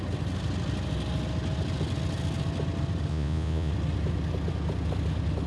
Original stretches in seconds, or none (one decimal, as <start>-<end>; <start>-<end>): 0.0-3.1; 3.7-5.5